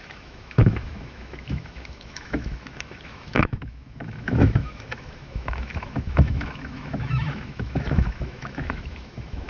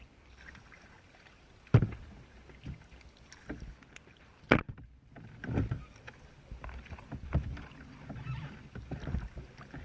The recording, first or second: second